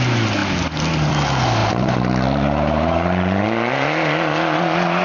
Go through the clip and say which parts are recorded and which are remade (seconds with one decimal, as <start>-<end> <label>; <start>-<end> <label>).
0.0-5.0 recorded